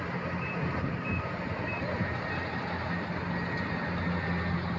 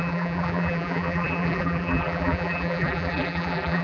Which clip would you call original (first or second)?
first